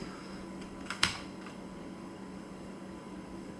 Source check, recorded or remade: remade